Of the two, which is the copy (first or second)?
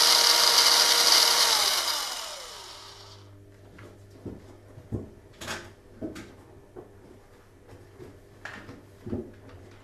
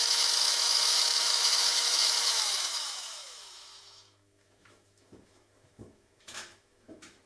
second